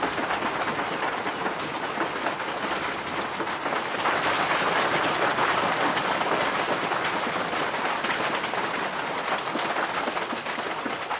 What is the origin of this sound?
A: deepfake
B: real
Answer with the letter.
B